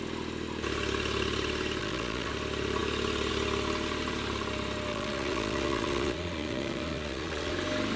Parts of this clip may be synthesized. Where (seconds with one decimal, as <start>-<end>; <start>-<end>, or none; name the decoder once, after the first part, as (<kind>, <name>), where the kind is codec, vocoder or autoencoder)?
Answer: 1.8-2.3 (vocoder, Vocos); 4.9-7.5